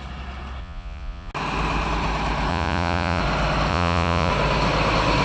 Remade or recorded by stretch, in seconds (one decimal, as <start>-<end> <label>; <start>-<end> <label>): 0.0-0.6 recorded; 0.6-1.3 remade; 1.3-2.5 recorded; 2.5-3.2 remade; 3.2-3.7 recorded; 3.7-4.3 remade; 4.3-5.2 recorded

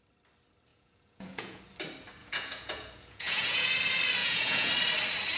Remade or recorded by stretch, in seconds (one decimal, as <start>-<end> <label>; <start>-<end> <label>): 0.0-0.7 recorded; 0.7-1.6 remade; 1.6-2.2 recorded; 2.2-3.7 remade; 3.7-4.2 recorded; 4.2-4.7 remade; 4.7-5.4 recorded

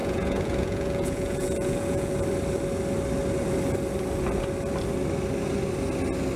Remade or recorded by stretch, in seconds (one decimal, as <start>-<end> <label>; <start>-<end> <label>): 0.0-2.1 remade; 2.1-6.4 recorded

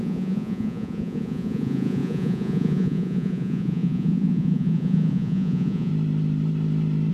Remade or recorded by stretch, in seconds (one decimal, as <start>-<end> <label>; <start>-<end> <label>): 0.0-5.9 remade; 5.9-7.1 recorded